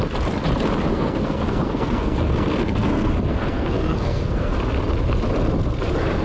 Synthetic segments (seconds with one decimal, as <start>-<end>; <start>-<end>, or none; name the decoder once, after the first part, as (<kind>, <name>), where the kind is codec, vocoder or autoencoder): 0.9-4.6 (codec, SNAC)